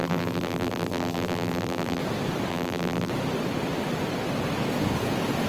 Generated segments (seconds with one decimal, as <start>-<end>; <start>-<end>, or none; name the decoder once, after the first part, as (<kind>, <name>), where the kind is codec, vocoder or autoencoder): 0.0-2.0 (vocoder, BigVGAN v2); 2.5-3.1